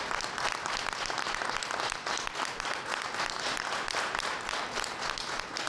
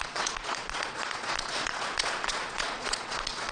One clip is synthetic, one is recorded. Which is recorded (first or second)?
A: first